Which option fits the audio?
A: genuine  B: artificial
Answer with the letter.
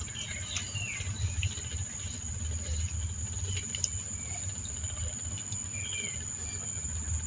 A